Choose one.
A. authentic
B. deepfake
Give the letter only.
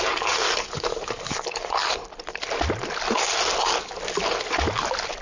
A